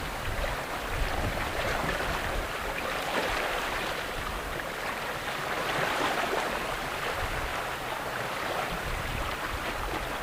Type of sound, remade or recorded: remade